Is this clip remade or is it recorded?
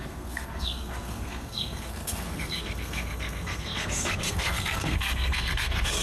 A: remade